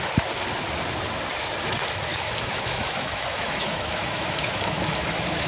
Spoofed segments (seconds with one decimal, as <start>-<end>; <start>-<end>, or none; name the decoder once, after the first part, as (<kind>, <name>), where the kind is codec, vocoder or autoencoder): 2.1-5.5 (autoencoder, DAC-VAE)